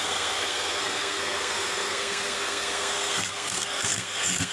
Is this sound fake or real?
fake